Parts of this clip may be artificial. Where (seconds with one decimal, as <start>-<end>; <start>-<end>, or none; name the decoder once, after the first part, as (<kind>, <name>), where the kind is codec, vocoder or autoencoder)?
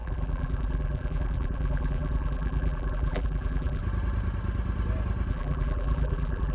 0.0-3.8 (vocoder, BigVGAN v2); 5.3-6.5